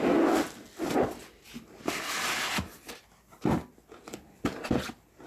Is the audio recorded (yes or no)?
yes